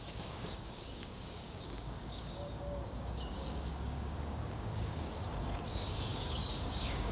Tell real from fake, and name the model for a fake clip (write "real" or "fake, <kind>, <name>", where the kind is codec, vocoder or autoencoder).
fake, codec, DAC